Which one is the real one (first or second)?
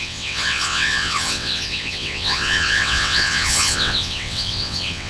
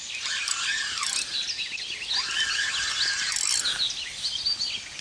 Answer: second